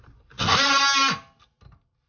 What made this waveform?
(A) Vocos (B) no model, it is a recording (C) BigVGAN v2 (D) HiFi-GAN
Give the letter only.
B